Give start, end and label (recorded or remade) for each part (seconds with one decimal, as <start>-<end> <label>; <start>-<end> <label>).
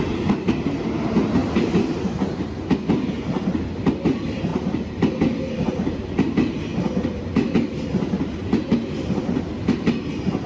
0.0-1.4 recorded; 1.4-2.5 remade; 2.5-4.5 recorded; 4.5-5.0 remade; 5.0-10.5 recorded